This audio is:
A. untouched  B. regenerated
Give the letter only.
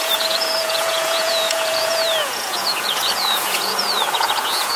B